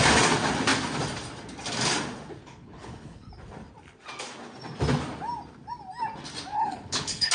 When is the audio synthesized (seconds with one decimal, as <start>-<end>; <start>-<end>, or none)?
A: 2.4-3.3; 6.5-7.3